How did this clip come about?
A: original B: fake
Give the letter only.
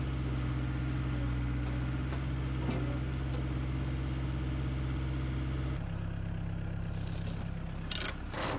A